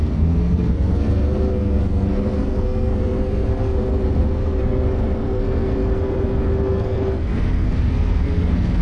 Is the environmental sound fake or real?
fake